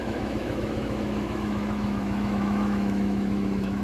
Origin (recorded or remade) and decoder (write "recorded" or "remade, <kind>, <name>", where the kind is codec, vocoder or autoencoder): remade, autoencoder, DAC-VAE